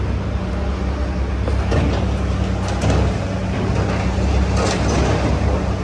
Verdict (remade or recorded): recorded